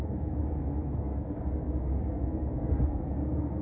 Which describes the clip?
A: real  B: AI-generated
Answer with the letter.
B